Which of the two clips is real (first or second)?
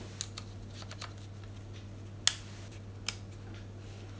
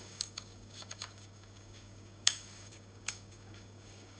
first